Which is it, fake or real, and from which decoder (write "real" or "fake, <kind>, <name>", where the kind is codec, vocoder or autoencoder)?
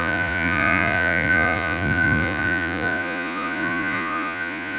fake, vocoder, Vocos